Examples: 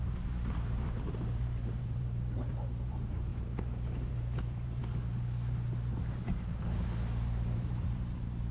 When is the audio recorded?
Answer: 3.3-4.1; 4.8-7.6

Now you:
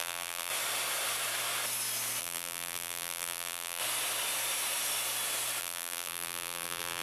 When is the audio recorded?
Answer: 0.5-2.2; 3.8-5.6

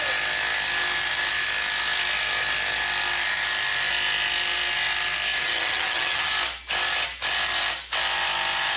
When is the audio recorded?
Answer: 0.0-5.4; 6.3-8.8